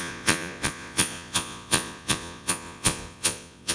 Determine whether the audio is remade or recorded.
remade